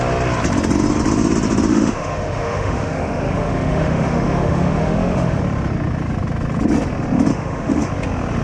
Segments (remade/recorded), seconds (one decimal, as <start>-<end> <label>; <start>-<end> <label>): 0.0-1.7 recorded; 1.7-5.4 remade; 5.4-7.3 recorded; 7.3-7.9 remade; 7.9-8.4 recorded